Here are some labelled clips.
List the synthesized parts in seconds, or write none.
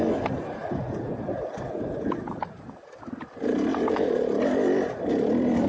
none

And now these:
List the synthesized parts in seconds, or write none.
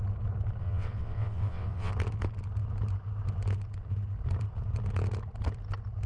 0.6-1.9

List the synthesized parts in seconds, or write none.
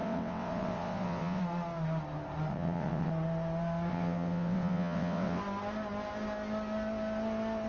0.0-1.4; 2.5-3.1; 3.9-5.4